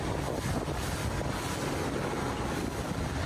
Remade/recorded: recorded